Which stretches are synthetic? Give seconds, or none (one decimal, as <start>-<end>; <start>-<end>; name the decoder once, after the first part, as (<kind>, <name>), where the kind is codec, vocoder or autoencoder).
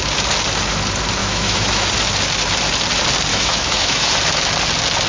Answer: 1.2-1.9 (autoencoder, DAC-VAE); 3.3-4.1